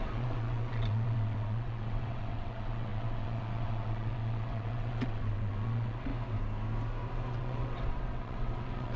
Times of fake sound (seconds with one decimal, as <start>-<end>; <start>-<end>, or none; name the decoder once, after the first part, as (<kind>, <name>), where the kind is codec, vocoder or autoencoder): 0.0-6.1 (vocoder, WaveNeXt); 7.3-9.0